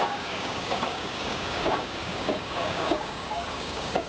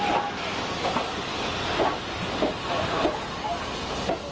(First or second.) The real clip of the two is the second